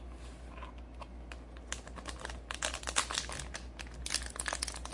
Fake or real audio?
real